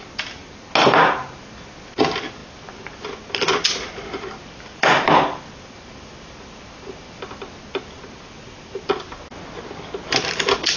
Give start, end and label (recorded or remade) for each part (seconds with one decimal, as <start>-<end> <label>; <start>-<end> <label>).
0.0-10.8 recorded